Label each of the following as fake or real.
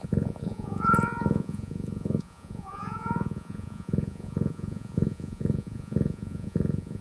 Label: fake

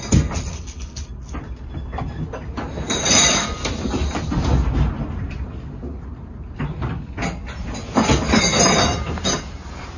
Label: real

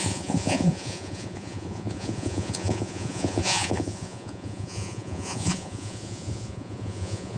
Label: fake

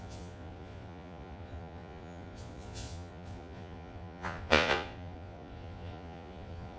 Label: fake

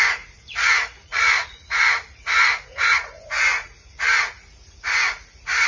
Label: fake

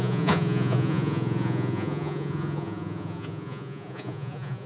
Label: fake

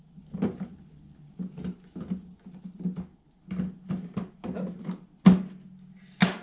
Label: real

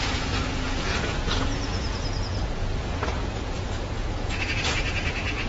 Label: fake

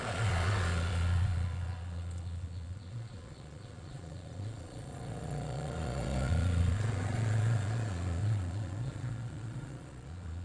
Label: fake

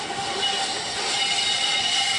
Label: real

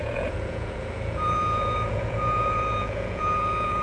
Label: fake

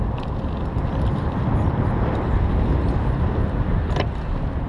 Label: real